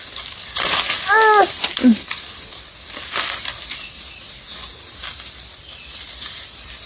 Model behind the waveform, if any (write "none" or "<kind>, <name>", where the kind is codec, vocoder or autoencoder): none